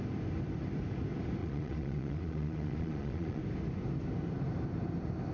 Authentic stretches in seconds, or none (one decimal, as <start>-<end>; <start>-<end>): 0.0-1.4; 3.4-5.3